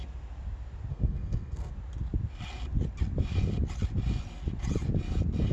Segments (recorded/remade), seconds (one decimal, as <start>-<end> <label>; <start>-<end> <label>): 0.0-0.9 recorded; 0.9-1.7 remade; 1.7-5.5 recorded